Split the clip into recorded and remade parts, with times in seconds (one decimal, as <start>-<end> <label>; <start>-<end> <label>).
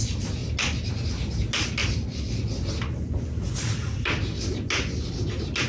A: 0.0-5.7 recorded